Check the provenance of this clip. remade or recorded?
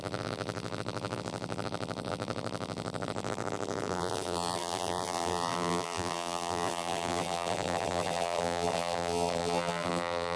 remade